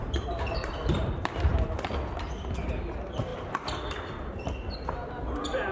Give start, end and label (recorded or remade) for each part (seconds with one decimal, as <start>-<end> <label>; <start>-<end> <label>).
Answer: 0.0-0.7 remade; 0.7-5.7 recorded